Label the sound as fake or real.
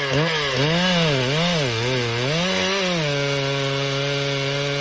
real